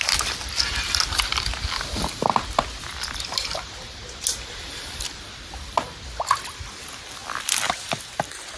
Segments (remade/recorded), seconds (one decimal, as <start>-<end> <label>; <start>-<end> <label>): 0.0-8.6 recorded